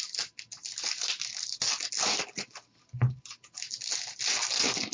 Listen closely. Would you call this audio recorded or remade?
recorded